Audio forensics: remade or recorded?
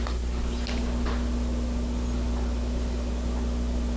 recorded